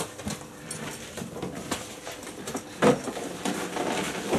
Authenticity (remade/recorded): recorded